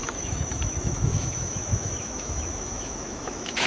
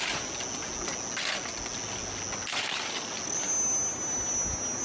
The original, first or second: second